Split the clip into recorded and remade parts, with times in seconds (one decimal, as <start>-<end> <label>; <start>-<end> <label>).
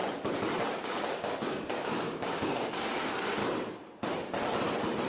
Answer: 0.0-0.8 recorded; 0.8-3.4 remade; 3.4-5.1 recorded